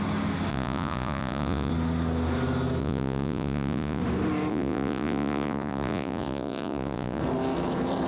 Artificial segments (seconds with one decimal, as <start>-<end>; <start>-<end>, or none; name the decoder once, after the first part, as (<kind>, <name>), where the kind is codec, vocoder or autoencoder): 0.5-1.7 (vocoder, Vocos); 2.8-4.0; 4.5-7.2